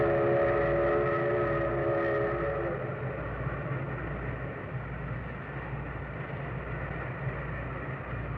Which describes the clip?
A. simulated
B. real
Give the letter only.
B